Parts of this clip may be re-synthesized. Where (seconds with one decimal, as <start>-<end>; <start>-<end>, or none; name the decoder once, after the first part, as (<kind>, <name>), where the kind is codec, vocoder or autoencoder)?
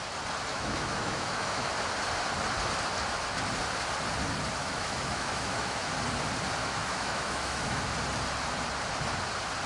0.5-1.7 (autoencoder, DAC-VAE); 4.6-5.9; 6.6-7.8